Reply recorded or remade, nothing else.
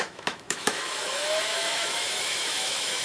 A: remade